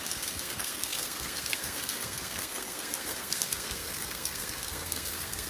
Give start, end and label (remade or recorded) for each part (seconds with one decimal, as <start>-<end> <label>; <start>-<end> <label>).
0.0-5.5 remade